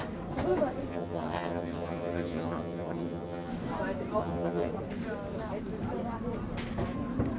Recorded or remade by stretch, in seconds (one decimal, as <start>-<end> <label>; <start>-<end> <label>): 0.0-0.9 recorded; 0.9-3.5 remade; 3.5-4.2 recorded; 4.2-4.7 remade; 4.7-7.4 recorded